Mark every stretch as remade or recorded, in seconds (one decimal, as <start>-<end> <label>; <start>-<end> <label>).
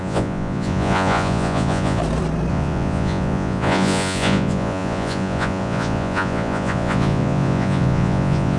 0.0-2.0 remade; 2.0-2.5 recorded; 2.5-8.6 remade